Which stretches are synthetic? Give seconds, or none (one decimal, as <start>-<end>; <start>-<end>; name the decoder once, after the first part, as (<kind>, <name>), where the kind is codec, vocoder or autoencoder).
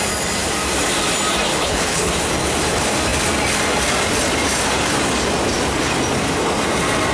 1.5-2.1 (codec, HILCodec)